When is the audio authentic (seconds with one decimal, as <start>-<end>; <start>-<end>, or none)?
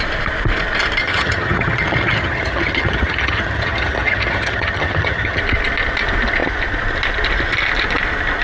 0.0-1.0; 5.4-8.4